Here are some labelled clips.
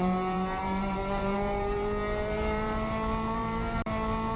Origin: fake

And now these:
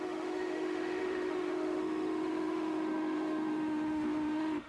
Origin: fake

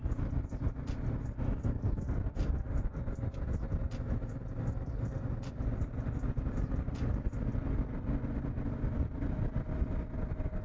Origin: real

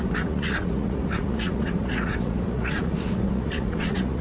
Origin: fake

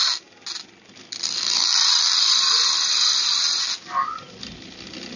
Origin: real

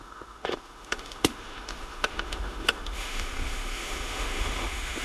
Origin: fake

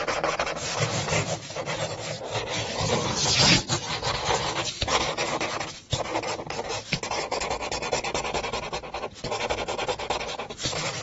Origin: real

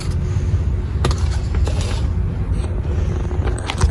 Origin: real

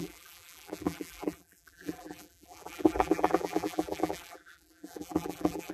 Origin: fake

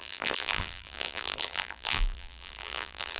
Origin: fake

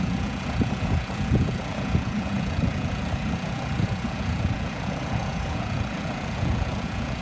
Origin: fake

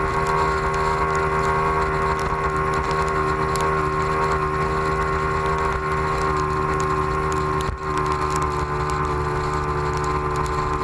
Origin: real